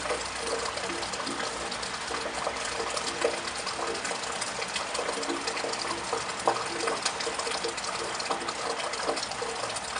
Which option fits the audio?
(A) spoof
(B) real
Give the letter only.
B